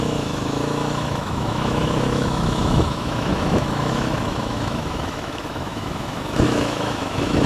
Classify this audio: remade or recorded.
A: remade